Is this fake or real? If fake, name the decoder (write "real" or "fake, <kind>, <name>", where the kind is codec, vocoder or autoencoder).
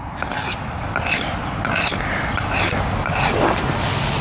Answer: real